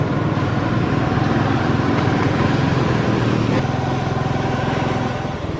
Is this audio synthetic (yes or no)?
no